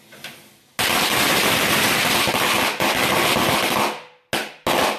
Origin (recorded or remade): recorded